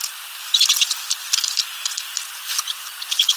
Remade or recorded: recorded